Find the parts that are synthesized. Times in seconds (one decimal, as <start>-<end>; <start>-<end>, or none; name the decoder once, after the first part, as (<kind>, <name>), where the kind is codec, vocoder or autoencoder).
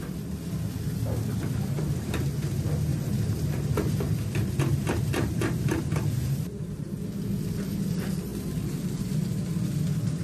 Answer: 2.9-6.9 (vocoder, BigVGAN v2)